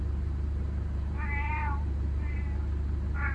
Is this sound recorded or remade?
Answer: remade